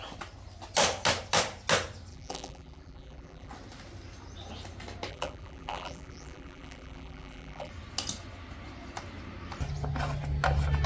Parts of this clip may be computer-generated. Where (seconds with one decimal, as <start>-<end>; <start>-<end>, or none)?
2.1-3.5; 5.1-7.7